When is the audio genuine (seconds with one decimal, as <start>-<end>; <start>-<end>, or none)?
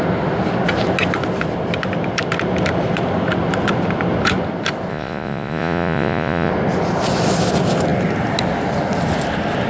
0.0-4.9; 6.5-9.7